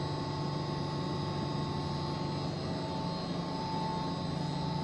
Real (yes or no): yes